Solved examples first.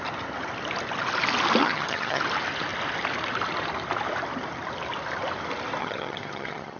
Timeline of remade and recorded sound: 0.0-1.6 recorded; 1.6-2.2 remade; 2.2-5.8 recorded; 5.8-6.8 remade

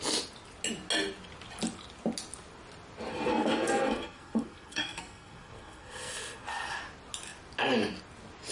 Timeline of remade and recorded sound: 0.0-3.1 recorded; 3.1-6.8 remade; 6.8-8.5 recorded

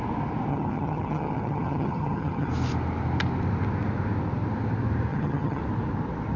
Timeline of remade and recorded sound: 0.0-0.5 recorded; 0.5-2.5 remade; 2.5-5.1 recorded; 5.1-5.6 remade; 5.6-6.4 recorded

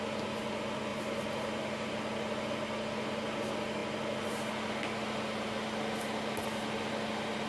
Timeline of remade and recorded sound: 0.0-0.9 recorded; 0.9-1.9 remade; 1.9-7.5 recorded

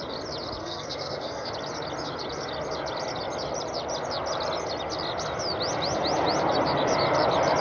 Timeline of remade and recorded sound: 0.0-0.6 recorded; 0.6-1.5 remade; 1.5-7.6 recorded

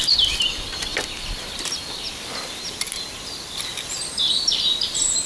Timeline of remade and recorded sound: 0.0-5.3 recorded